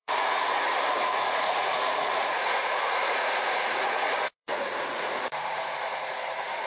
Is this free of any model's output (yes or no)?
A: no